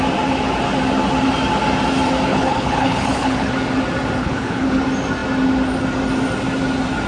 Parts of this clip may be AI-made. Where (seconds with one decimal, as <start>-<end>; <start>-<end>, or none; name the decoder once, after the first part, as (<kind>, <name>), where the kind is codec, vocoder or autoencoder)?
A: 2.3-3.5 (codec, HILCodec); 4.2-4.8